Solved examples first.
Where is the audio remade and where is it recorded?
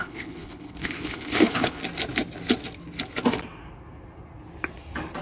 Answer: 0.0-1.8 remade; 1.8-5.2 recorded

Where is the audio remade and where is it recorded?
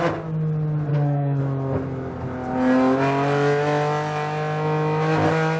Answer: 0.0-0.9 recorded; 0.9-1.4 remade; 1.4-5.6 recorded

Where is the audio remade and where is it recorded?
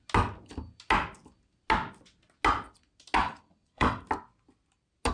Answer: 0.0-3.2 recorded; 3.2-4.0 remade; 4.0-5.1 recorded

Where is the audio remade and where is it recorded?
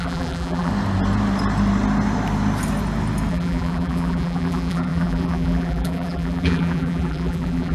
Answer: 0.0-0.7 remade; 0.7-3.3 recorded; 3.3-7.7 remade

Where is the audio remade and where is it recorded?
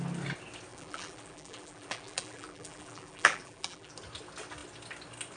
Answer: 0.0-0.7 recorded; 0.7-3.9 remade; 3.9-5.4 recorded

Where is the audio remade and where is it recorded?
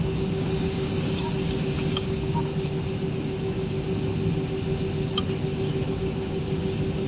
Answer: 0.0-2.5 remade; 2.5-3.1 recorded; 3.1-4.1 remade; 4.1-5.9 recorded; 5.9-6.4 remade; 6.4-7.1 recorded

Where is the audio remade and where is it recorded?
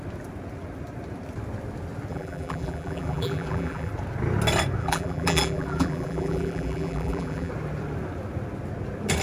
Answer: 0.0-2.1 recorded; 2.1-3.9 remade; 3.9-4.8 recorded; 4.8-7.5 remade; 7.5-9.2 recorded